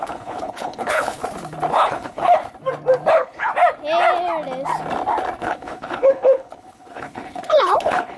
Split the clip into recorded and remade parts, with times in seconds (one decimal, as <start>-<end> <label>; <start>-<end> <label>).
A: 0.0-1.2 remade; 1.2-1.7 recorded; 1.7-2.4 remade; 2.4-3.1 recorded; 3.1-3.5 remade; 3.5-5.4 recorded; 5.4-8.2 remade